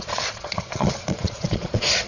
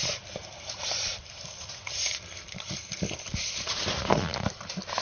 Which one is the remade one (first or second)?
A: first